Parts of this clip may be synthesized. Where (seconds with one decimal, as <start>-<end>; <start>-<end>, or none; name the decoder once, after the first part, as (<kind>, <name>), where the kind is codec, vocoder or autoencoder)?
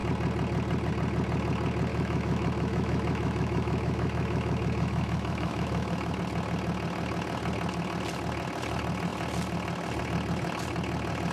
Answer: 1.9-6.2 (autoencoder, DAC-VAE)